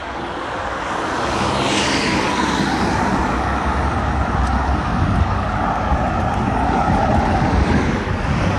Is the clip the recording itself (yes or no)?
no